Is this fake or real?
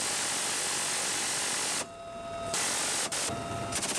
real